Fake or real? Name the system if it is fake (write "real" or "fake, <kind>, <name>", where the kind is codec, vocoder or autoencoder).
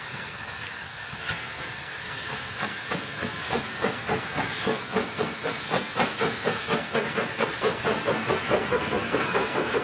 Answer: fake, codec, SNAC